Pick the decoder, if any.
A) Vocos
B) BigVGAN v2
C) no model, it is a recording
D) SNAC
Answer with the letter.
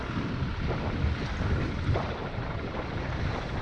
C